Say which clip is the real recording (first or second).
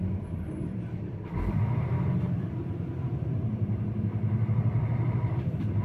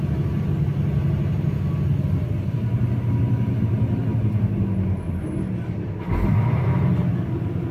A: second